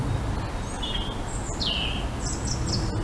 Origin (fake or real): real